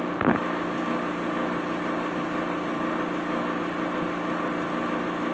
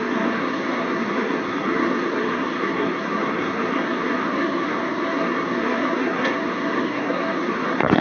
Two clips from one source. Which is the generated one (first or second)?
second